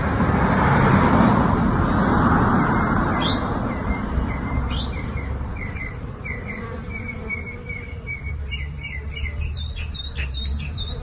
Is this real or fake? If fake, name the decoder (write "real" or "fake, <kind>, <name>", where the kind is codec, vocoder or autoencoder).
fake, vocoder, BigVGAN v2